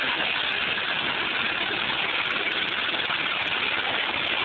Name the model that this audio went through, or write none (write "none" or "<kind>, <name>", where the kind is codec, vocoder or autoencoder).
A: none